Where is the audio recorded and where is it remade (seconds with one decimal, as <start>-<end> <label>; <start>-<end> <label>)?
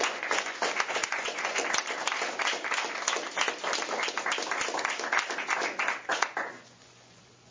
0.0-1.6 remade; 1.6-6.1 recorded; 6.1-7.5 remade